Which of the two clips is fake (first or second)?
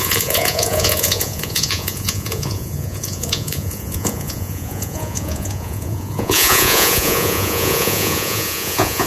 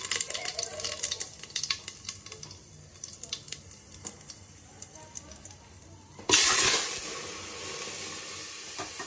first